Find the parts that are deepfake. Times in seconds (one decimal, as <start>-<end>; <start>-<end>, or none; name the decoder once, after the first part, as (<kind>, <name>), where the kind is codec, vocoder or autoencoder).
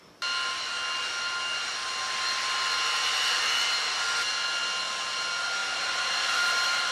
5.6-6.9 (vocoder, BigVGAN v2)